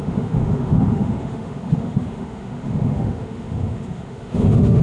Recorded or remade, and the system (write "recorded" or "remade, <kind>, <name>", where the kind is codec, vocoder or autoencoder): remade, autoencoder, DAC-VAE